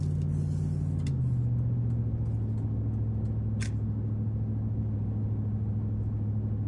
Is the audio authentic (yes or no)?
yes